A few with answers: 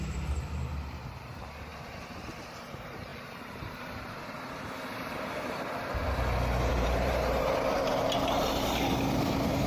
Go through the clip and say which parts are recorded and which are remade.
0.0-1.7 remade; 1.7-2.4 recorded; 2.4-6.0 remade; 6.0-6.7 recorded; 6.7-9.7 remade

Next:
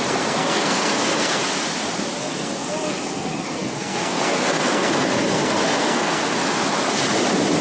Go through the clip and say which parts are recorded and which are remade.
0.0-1.4 remade; 1.4-2.2 recorded; 2.2-6.2 remade; 6.2-7.6 recorded